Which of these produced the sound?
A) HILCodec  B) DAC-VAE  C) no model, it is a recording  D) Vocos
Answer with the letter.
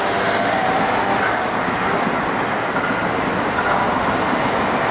C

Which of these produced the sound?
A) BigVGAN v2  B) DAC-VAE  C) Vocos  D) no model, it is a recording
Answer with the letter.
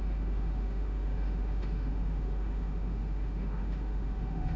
B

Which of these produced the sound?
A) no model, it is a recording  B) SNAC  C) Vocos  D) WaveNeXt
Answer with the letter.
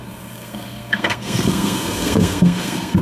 B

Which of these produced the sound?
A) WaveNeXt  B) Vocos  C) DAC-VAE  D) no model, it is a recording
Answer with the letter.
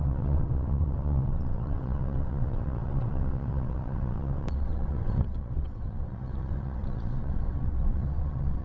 A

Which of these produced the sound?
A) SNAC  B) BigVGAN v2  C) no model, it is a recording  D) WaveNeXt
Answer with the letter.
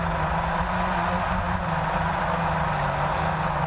C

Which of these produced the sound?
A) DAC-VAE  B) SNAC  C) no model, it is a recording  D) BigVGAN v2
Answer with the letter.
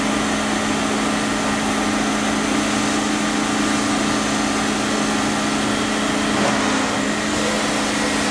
C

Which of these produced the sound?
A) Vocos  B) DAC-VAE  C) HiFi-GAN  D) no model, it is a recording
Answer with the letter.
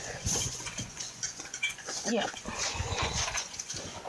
A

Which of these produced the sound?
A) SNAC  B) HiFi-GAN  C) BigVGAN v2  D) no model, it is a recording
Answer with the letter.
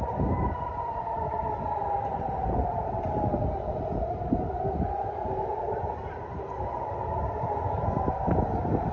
C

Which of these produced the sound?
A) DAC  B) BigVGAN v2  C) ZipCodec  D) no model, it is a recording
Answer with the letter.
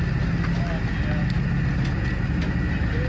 D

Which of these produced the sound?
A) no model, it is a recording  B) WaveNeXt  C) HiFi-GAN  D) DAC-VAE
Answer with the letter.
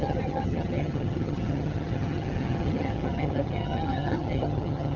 C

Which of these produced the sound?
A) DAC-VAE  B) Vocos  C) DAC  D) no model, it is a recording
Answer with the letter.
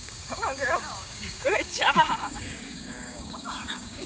C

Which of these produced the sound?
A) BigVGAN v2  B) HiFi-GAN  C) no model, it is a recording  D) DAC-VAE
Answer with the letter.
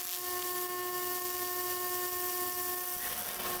C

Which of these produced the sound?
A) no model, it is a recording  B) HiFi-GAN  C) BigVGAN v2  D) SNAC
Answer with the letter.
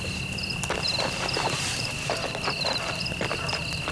A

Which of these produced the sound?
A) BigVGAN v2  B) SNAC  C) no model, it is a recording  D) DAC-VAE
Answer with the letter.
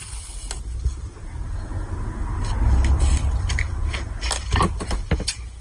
C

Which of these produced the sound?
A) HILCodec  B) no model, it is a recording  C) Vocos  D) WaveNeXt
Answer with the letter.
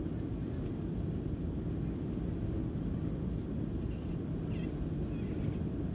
B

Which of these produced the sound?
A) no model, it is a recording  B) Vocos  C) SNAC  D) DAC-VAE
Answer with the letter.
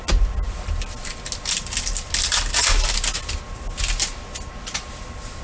A